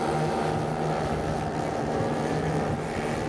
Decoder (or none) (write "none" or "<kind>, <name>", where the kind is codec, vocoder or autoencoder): none